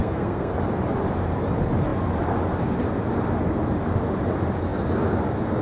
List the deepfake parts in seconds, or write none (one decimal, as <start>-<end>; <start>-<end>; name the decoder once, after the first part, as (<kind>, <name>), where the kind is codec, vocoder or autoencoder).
0.0-0.5 (codec, SNAC)